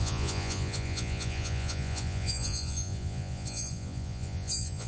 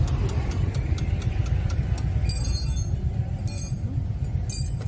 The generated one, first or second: first